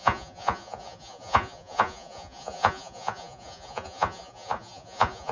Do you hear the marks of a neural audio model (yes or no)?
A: yes